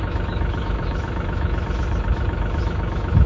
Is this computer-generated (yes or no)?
yes